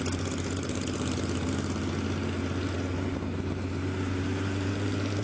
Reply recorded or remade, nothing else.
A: recorded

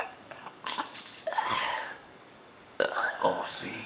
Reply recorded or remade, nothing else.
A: remade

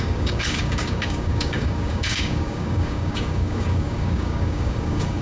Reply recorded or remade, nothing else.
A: remade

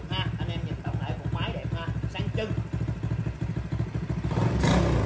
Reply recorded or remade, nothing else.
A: recorded